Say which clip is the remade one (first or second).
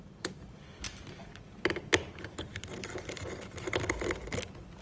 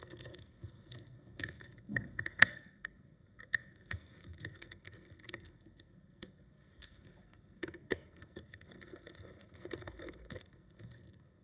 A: second